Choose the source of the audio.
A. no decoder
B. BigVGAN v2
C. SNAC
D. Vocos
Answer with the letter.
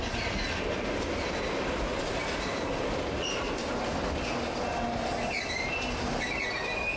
A